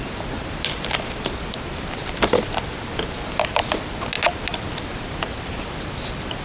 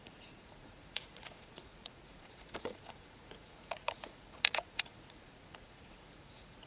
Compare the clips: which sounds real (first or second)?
first